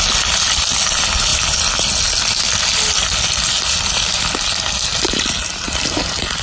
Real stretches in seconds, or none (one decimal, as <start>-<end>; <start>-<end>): 0.0-6.4